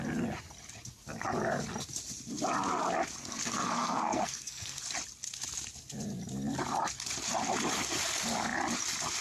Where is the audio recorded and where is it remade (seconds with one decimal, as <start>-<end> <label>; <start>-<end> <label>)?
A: 0.0-3.2 recorded; 3.2-4.8 remade; 4.8-9.2 recorded